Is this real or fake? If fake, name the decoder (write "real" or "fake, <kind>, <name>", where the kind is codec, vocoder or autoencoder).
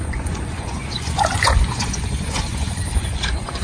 fake, vocoder, Vocos